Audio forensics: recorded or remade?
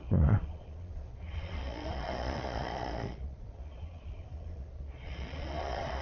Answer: remade